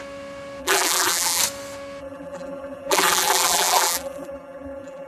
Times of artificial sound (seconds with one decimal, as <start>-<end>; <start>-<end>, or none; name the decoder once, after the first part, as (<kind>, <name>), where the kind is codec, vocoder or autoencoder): 0.6-1.4 (vocoder, BigVGAN v2); 2.0-5.1